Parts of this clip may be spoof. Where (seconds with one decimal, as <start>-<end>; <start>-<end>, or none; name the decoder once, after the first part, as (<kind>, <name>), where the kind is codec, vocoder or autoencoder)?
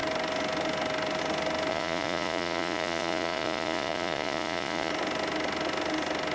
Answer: 1.7-4.9 (vocoder, Vocos)